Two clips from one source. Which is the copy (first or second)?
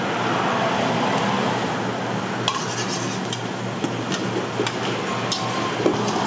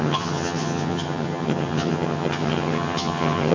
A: second